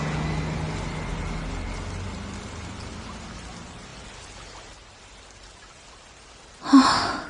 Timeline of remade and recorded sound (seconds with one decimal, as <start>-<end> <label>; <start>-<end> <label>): 0.0-7.3 recorded

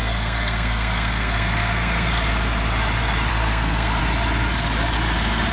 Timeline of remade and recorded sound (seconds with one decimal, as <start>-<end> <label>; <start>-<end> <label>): 0.0-2.3 remade; 2.3-3.3 recorded; 3.3-4.0 remade; 4.0-5.5 recorded

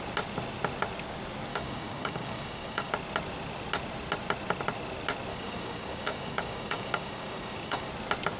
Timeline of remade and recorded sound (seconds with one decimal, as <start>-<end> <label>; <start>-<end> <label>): 0.0-1.5 recorded; 1.5-2.9 remade; 2.9-5.3 recorded; 5.3-7.9 remade; 7.9-8.4 recorded

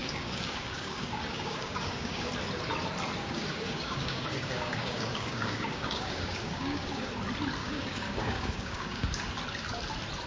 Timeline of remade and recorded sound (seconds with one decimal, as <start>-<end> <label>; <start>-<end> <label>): 0.0-2.3 remade; 2.3-3.2 recorded; 3.2-7.1 remade; 7.1-7.6 recorded; 7.6-9.2 remade; 9.2-10.3 recorded